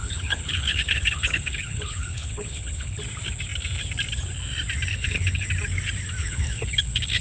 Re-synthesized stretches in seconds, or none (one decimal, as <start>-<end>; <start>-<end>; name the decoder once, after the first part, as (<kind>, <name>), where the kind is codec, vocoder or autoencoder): 0.0-3.0 (codec, HILCodec); 4.9-5.5; 6.2-7.2